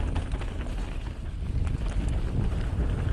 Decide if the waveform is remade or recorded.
recorded